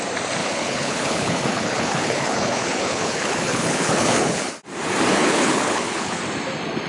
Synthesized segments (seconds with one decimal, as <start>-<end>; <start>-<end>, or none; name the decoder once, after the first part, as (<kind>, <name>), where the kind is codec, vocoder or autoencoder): 0.4-4.5 (codec, HILCodec); 5.1-6.2